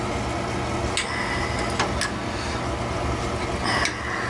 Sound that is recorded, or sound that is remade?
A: recorded